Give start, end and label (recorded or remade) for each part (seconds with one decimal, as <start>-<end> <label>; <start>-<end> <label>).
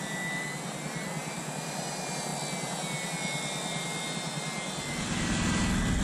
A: 0.0-1.2 recorded; 1.2-1.9 remade; 1.9-6.0 recorded